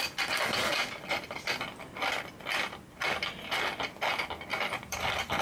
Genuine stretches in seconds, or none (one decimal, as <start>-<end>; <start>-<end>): 0.0-4.5; 5.0-5.4